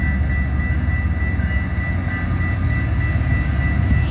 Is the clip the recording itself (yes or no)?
yes